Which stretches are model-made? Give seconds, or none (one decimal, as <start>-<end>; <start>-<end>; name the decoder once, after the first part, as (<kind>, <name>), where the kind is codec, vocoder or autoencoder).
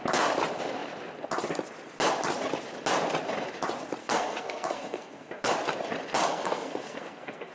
4.0-5.5 (codec, SNAC); 6.2-7.5